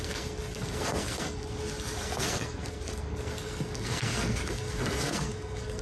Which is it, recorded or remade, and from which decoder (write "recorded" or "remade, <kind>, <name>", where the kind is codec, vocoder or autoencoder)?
remade, codec, SNAC